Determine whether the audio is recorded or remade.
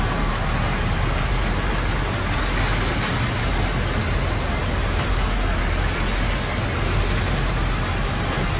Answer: recorded